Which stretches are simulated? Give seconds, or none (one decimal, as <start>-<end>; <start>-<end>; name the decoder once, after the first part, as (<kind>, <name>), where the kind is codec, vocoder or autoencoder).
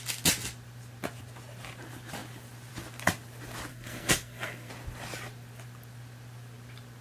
3.7-4.7 (codec, SNAC)